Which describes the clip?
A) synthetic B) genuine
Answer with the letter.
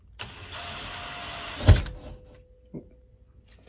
B